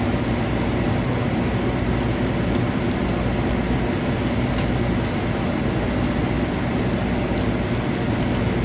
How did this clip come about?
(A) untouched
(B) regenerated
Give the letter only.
A